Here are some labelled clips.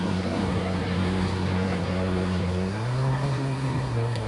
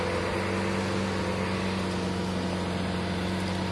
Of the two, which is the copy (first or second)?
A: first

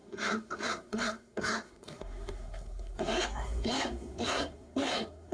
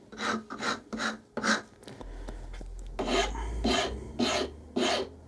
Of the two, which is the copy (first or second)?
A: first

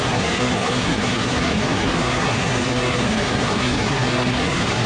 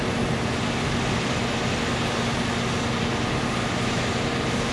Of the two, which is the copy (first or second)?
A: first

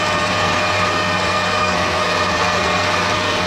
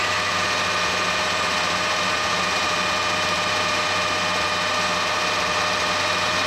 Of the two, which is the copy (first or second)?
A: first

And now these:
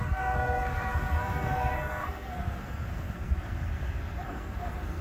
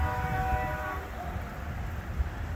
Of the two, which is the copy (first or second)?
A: first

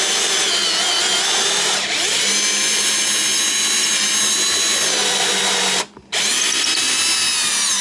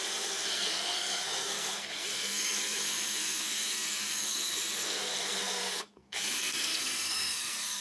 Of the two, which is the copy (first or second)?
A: second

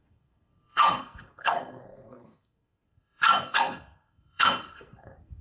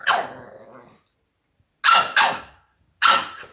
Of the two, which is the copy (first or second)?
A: first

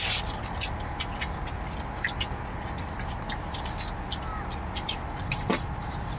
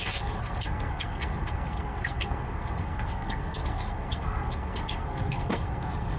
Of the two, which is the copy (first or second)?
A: second